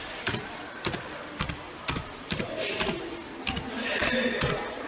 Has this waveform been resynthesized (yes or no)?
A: yes